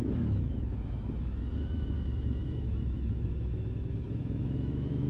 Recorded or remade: remade